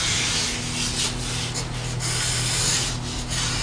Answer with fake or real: real